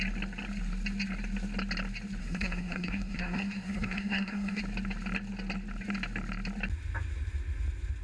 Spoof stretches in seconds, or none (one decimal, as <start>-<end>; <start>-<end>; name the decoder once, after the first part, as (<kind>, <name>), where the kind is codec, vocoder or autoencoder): 2.2-4.6 (codec, SNAC)